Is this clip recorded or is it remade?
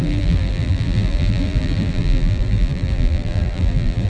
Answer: remade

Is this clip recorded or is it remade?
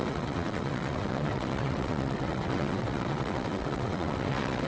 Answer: remade